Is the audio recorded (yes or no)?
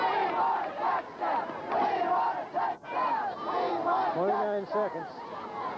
yes